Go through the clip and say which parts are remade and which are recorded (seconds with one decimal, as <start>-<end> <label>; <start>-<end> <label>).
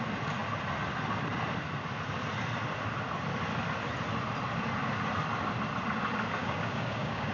0.0-6.4 recorded; 6.4-7.3 remade